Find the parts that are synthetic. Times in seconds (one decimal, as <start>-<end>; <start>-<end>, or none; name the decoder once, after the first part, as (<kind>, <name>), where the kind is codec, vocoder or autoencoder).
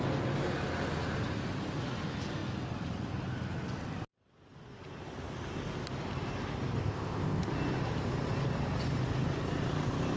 6.8-7.5 (codec, ZipCodec)